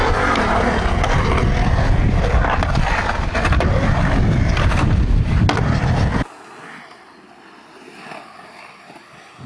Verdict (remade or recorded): recorded